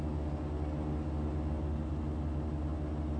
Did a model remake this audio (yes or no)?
no